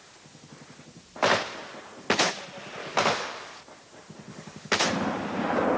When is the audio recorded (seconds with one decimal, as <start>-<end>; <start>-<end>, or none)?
0.0-2.8; 3.6-4.3; 4.8-5.8